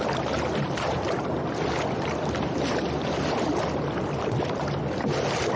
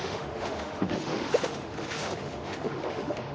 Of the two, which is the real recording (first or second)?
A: first